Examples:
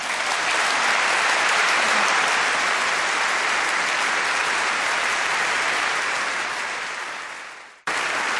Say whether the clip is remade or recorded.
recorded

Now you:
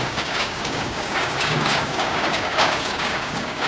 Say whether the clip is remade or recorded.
remade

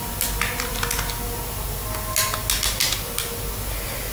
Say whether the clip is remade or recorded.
recorded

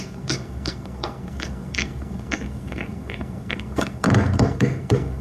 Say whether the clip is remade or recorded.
remade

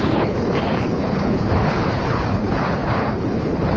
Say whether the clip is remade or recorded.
remade